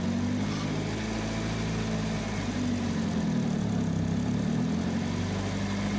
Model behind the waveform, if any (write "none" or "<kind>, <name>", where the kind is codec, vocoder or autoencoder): none